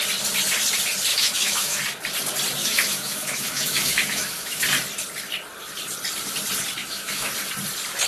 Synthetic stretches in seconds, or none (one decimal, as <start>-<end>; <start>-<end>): 1.1-1.8; 2.6-4.6; 6.8-7.3